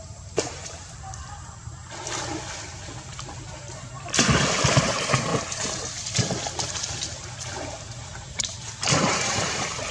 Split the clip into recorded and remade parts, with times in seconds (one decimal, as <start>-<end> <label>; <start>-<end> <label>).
0.0-1.8 remade; 1.8-4.8 recorded; 4.8-5.3 remade; 5.3-6.8 recorded; 6.8-9.9 remade